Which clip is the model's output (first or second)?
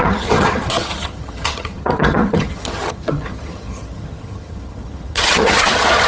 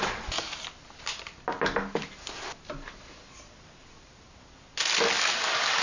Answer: first